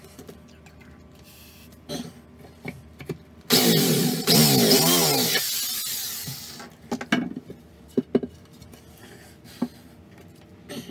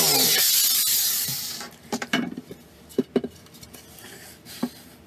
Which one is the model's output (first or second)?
second